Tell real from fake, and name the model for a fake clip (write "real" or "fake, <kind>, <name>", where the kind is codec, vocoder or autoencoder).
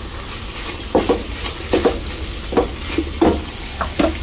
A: real